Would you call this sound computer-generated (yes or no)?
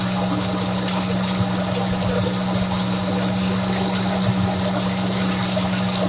no